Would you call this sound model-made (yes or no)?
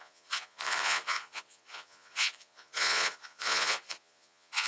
yes